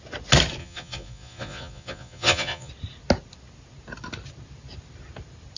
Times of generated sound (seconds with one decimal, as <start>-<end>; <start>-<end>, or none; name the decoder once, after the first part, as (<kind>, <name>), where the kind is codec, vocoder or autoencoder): 0.6-2.7 (vocoder, Vocos)